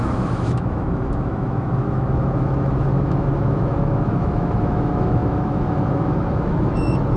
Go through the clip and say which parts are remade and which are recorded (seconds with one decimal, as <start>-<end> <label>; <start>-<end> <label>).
0.0-7.2 remade